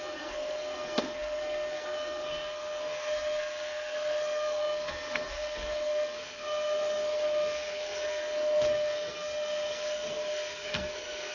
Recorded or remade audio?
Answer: remade